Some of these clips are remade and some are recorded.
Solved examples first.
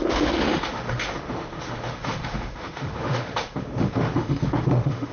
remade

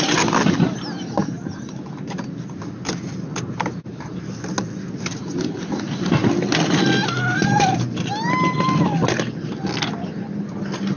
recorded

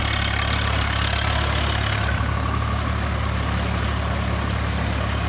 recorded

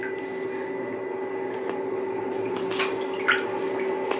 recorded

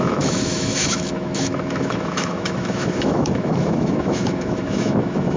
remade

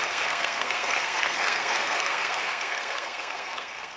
remade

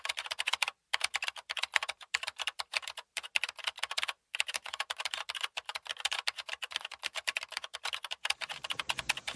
remade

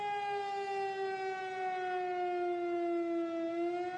recorded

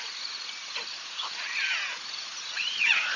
remade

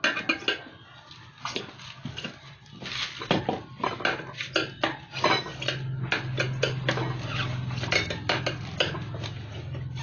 recorded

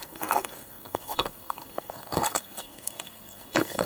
remade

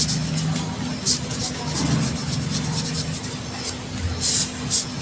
recorded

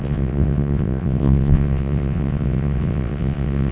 remade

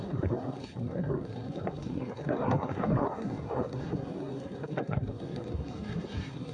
remade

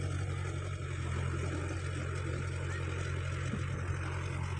recorded